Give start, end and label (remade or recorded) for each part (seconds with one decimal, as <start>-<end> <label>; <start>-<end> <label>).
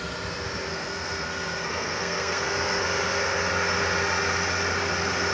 0.0-0.7 recorded; 0.7-2.8 remade; 2.8-5.3 recorded